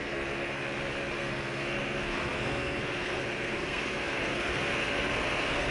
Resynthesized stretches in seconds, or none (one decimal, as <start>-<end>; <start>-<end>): 0.0-0.6; 1.2-5.7